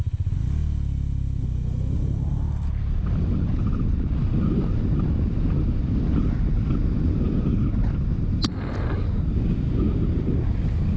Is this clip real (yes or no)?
yes